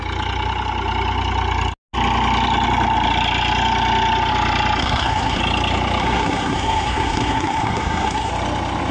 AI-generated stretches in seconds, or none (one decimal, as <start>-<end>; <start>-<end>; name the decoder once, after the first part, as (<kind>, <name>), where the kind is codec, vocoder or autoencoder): 4.8-5.4 (codec, SNAC); 6.0-8.3